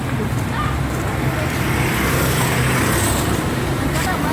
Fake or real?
real